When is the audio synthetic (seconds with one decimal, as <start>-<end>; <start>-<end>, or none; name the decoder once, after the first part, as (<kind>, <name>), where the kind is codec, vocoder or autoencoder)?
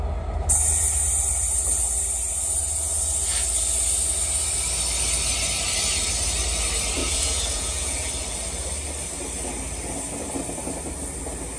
7.0-8.1 (vocoder, Vocos)